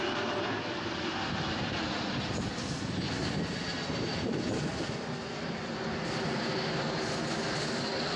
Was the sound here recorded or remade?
recorded